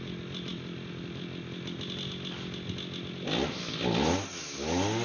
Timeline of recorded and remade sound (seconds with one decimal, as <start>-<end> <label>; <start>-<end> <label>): 0.0-5.0 recorded